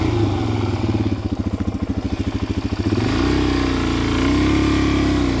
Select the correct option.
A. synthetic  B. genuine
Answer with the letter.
B